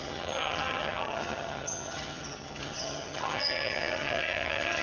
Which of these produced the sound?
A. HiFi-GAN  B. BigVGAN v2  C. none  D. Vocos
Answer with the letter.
A